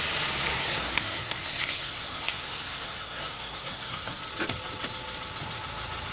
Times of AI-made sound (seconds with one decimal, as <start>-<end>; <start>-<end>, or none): 0.5-4.2